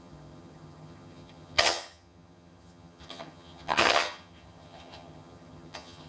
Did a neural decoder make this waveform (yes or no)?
yes